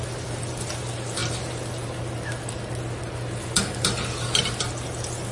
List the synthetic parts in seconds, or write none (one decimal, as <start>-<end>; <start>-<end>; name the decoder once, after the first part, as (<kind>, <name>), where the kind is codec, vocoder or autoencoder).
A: none